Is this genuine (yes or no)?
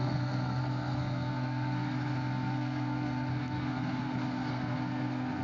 no